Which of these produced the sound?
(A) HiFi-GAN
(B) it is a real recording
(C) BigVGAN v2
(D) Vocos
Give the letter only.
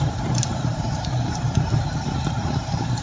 C